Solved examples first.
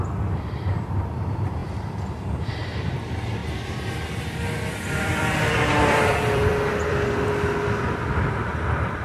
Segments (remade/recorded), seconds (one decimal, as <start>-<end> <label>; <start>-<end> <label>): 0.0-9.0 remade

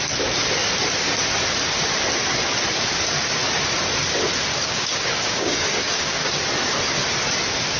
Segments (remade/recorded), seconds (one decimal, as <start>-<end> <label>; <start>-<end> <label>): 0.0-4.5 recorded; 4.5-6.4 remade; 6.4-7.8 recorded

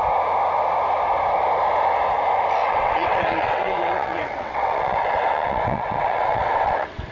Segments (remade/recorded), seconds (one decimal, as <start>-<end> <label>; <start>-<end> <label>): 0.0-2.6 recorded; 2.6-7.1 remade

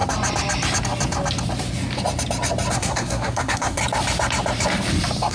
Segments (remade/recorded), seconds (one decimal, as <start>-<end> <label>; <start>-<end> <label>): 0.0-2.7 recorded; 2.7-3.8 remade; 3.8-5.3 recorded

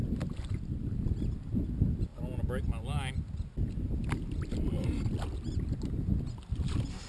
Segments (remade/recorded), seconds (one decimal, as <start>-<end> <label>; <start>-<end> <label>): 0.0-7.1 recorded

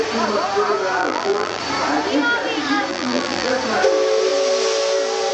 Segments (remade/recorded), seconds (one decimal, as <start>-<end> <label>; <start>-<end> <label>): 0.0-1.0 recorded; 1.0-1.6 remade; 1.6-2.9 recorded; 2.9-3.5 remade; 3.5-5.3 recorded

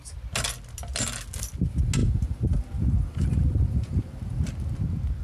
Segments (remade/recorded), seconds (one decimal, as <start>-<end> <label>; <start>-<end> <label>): 0.0-2.0 recorded; 2.0-5.2 remade